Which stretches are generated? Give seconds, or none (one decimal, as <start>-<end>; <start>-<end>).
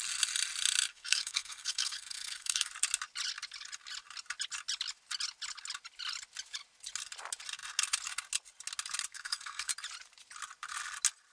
0.9-2.7; 9.1-9.7